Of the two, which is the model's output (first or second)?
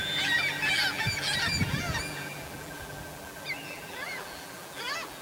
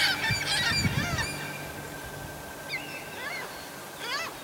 first